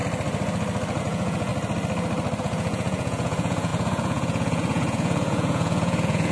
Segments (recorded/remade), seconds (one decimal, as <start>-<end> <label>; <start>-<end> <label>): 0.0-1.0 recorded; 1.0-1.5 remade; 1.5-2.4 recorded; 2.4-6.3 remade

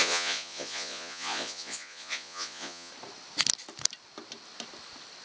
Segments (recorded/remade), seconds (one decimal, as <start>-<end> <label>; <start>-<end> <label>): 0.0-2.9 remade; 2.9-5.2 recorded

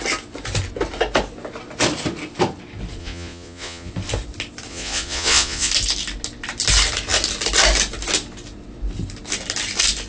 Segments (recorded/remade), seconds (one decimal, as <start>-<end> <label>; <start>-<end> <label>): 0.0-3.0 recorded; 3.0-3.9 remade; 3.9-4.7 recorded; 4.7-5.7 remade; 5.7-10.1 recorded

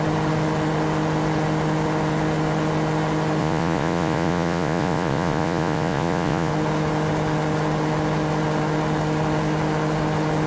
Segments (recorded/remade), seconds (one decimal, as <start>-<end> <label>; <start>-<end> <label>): 0.0-3.4 recorded; 3.4-6.5 remade; 6.5-10.5 recorded